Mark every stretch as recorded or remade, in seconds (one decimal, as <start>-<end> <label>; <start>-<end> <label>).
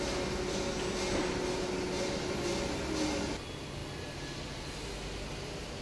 0.0-5.8 recorded